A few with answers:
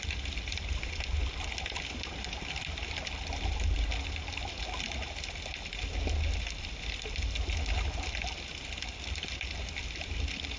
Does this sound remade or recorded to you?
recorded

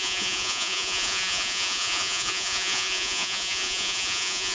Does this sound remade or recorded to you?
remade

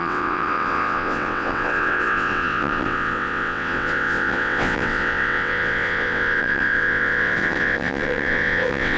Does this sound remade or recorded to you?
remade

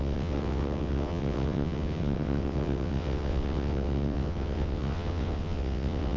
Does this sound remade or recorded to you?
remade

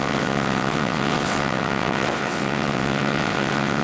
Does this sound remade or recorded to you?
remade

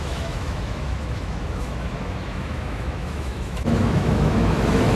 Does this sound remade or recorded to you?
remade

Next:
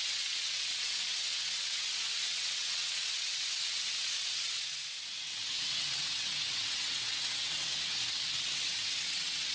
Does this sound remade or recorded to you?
remade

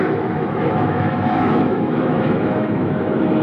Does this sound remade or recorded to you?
remade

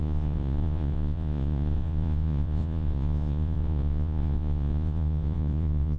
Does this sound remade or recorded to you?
remade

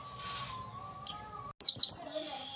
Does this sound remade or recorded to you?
recorded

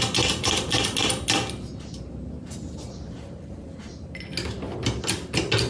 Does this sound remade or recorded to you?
recorded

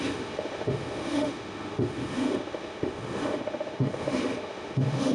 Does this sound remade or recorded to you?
remade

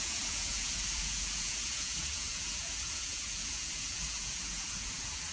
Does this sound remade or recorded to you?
remade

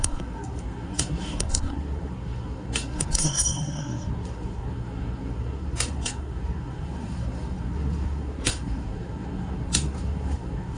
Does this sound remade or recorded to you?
remade